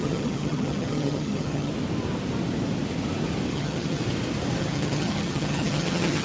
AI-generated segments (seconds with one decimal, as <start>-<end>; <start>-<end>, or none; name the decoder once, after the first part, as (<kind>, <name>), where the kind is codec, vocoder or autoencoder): 0.0-1.7 (vocoder, HiFi-GAN); 3.5-4.0; 4.6-6.2